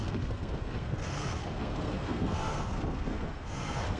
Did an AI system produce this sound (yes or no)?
yes